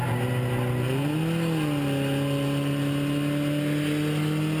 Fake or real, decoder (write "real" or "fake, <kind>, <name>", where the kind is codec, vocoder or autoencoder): real